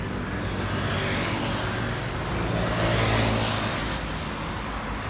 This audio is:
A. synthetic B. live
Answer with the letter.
B